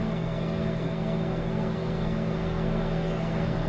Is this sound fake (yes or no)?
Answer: yes